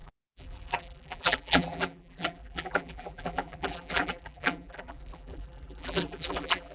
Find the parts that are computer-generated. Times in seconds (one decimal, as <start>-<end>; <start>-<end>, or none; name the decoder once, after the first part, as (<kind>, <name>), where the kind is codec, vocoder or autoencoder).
0.0-6.7 (vocoder, BigVGAN v2)